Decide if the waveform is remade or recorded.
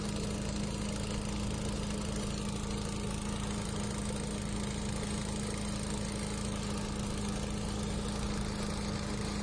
recorded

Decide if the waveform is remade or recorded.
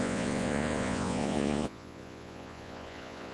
remade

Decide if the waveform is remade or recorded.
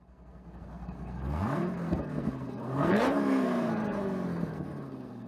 remade